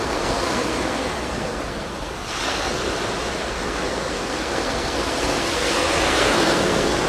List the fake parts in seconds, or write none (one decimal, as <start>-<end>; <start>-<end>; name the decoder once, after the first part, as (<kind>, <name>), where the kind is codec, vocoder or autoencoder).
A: 0.0-2.8 (codec, SNAC); 3.4-7.1